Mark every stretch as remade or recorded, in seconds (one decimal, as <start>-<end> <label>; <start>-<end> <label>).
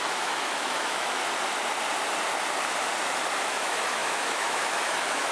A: 0.0-1.2 remade; 1.2-3.5 recorded; 3.5-5.3 remade